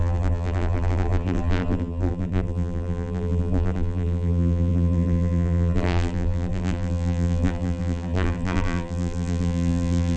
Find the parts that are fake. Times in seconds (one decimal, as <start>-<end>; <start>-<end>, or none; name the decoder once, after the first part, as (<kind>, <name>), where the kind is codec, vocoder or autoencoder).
0.0-10.2 (vocoder, BigVGAN v2)